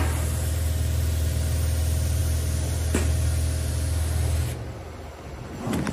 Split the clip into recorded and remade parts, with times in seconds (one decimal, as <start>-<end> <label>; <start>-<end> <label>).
0.0-5.9 recorded